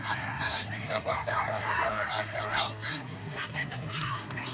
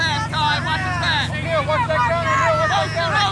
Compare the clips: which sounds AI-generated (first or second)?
first